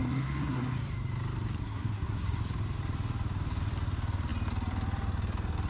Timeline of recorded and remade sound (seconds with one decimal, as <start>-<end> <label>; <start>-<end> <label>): 0.0-0.8 remade; 0.8-1.6 recorded; 1.6-2.4 remade; 2.4-5.7 recorded